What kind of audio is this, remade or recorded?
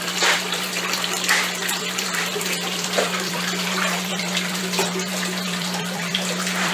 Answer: remade